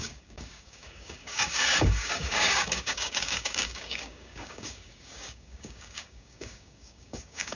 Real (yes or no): no